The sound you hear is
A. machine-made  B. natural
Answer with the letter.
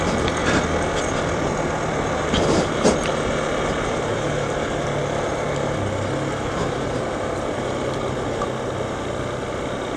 B